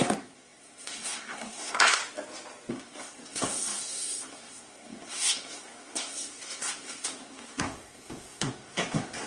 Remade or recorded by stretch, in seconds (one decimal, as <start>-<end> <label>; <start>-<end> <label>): 0.0-2.0 remade; 2.0-2.7 recorded; 2.7-9.3 remade